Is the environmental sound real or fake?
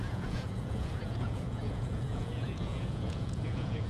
fake